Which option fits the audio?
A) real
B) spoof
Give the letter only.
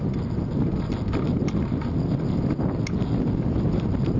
A